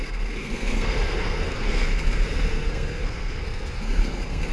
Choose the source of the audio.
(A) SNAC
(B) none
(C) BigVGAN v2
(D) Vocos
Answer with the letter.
A